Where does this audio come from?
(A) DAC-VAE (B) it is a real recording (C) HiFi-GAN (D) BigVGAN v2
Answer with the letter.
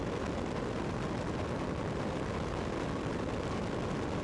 B